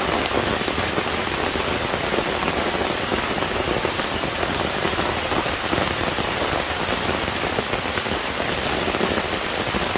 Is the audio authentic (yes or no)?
yes